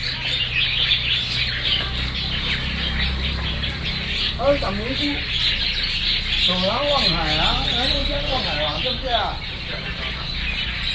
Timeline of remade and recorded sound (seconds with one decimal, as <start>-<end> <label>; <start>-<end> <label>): 0.0-8.0 recorded; 8.0-10.0 remade; 10.0-10.9 recorded